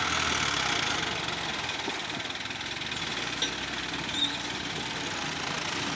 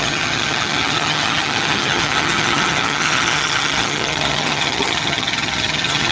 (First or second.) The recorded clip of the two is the first